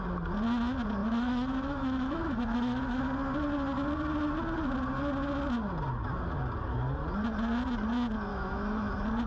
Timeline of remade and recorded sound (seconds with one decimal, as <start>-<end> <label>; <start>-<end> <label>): 0.0-1.0 recorded; 1.0-3.0 remade; 3.0-8.3 recorded; 8.3-8.9 remade; 8.9-9.3 recorded